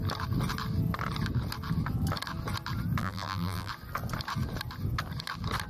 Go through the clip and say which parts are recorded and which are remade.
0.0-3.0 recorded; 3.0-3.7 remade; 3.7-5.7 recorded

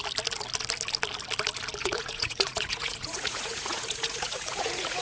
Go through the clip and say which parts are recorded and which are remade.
0.0-1.8 recorded; 1.8-5.0 remade

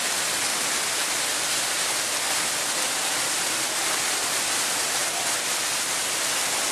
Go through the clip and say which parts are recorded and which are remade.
0.0-0.5 recorded; 0.5-4.5 remade; 4.5-5.0 recorded; 5.0-6.2 remade; 6.2-6.7 recorded

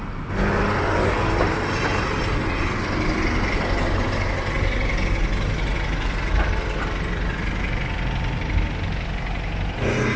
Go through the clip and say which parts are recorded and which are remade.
0.0-10.2 recorded

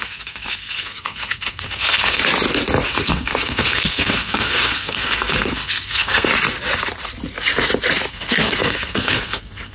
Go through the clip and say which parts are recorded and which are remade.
0.0-2.2 remade; 2.2-2.9 recorded; 2.9-6.3 remade; 6.3-8.1 recorded; 8.1-9.7 remade